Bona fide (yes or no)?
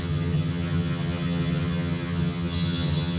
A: no